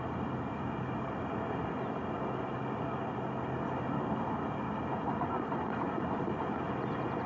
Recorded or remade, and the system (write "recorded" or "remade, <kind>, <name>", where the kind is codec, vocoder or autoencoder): recorded